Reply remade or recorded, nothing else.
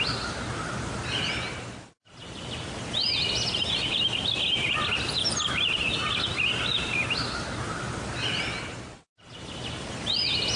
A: recorded